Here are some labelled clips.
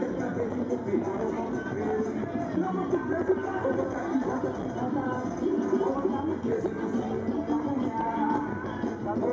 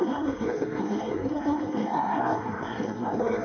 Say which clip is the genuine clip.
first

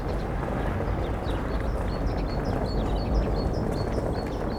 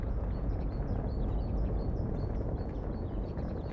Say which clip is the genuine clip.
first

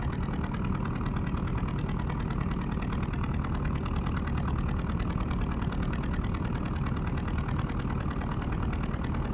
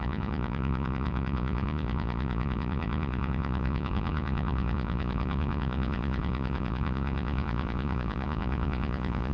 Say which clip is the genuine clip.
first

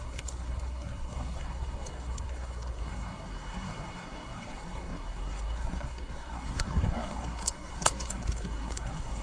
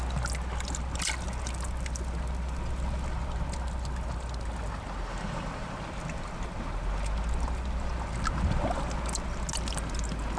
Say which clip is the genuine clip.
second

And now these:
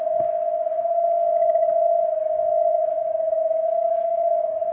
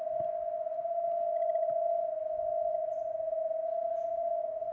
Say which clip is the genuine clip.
second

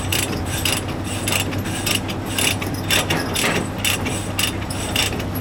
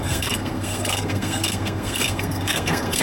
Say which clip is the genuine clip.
first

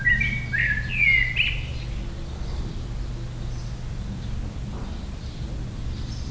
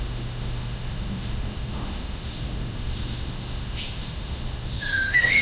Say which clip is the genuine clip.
first